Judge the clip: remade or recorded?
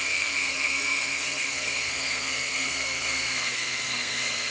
remade